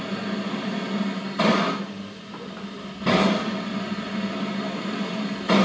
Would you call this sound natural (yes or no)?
yes